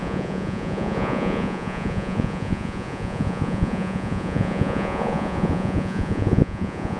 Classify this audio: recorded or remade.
remade